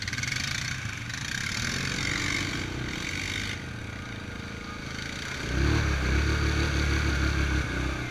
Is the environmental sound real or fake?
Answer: real